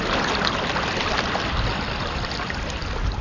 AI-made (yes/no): no